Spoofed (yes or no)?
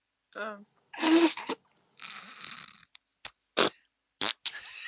no